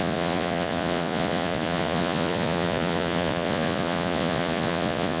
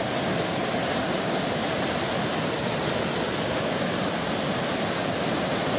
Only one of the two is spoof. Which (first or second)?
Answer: first